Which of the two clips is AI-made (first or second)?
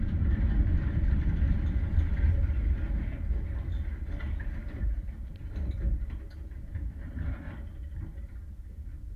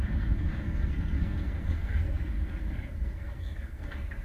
second